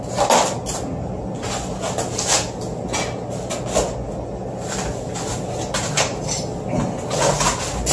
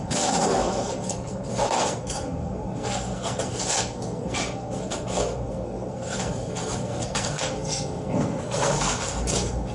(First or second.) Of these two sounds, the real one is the first